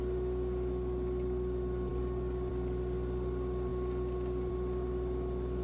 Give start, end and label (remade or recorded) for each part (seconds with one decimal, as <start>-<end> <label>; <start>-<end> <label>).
0.0-1.9 recorded; 1.9-2.5 remade; 2.5-5.6 recorded